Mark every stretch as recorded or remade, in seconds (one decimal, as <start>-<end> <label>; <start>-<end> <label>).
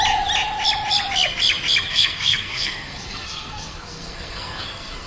0.0-1.9 recorded; 1.9-5.1 remade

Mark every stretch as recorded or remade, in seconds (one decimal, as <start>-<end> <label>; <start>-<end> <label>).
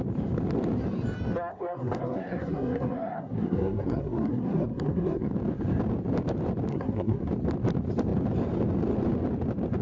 0.0-1.5 recorded; 1.5-5.3 remade; 5.3-6.7 recorded; 6.7-7.3 remade; 7.3-9.8 recorded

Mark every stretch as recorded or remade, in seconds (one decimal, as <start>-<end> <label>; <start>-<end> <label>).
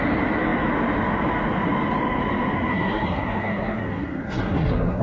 0.0-2.7 recorded; 2.7-5.0 remade